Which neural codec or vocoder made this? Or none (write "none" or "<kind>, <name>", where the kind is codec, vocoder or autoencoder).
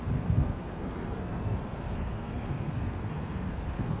codec, SNAC